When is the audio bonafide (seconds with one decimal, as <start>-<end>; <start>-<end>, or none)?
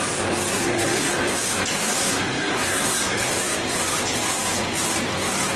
0.0-0.5; 1.1-1.8; 3.3-5.6